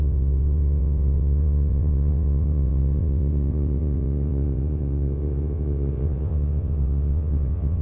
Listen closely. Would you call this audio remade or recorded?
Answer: remade